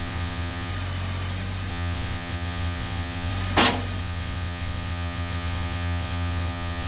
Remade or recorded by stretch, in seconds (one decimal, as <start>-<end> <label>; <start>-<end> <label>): 0.0-0.7 remade; 0.7-1.7 recorded; 1.7-3.3 remade; 3.3-4.0 recorded; 4.0-6.9 remade